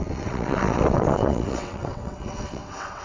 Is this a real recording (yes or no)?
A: no